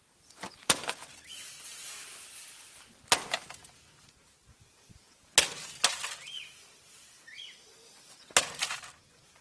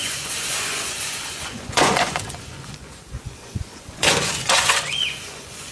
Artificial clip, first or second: second